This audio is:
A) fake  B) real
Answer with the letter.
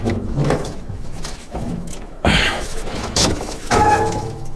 A